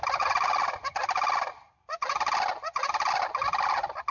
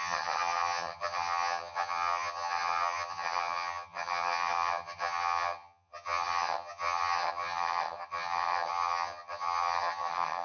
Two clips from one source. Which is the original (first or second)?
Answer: first